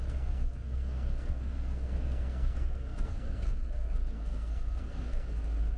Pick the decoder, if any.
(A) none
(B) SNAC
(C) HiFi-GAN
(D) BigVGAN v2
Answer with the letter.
B